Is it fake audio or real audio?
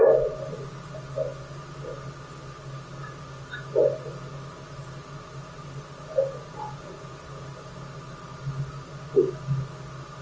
real